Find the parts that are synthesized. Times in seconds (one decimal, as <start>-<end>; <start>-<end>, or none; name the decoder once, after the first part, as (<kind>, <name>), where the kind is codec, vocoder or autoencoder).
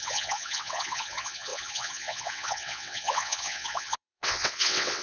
0.0-5.0 (vocoder, WaveNeXt)